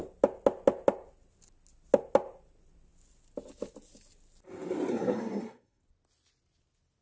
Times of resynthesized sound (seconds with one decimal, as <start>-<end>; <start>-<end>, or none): 4.9-5.8